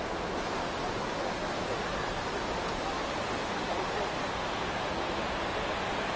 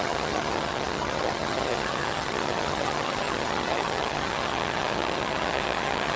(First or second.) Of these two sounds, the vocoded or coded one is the second